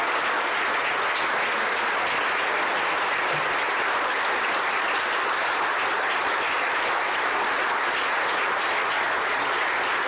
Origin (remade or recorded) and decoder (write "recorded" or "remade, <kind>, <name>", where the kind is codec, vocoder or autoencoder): recorded